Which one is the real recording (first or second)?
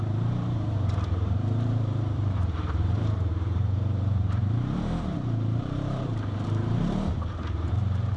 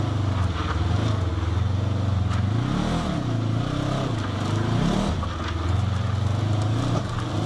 second